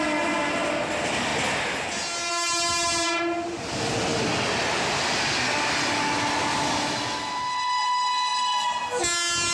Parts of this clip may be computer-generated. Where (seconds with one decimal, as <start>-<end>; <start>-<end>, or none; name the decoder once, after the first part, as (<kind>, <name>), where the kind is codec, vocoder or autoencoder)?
none